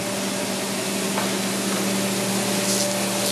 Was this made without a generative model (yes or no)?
yes